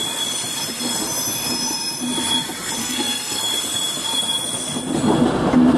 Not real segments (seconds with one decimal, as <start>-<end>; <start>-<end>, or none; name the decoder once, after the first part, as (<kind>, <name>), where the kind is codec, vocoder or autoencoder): 2.8-3.4 (codec, SNAC)